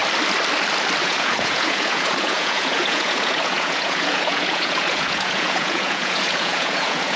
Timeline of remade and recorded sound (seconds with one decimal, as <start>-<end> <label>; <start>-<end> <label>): 0.0-1.0 recorded; 1.0-7.2 remade